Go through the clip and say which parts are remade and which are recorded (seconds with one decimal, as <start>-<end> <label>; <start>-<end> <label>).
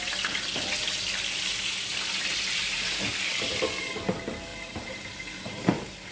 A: 0.0-2.3 recorded; 2.3-3.1 remade; 3.1-4.5 recorded; 4.5-6.1 remade